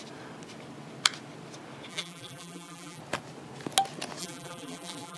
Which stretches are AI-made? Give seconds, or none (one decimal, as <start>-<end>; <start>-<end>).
1.9-3.0; 4.2-5.2